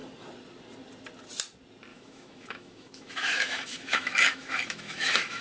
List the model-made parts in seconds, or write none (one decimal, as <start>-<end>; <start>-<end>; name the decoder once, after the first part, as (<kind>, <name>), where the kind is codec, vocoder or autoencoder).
1.9-5.4 (autoencoder, DAC-VAE)